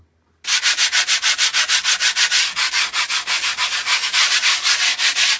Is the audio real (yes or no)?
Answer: yes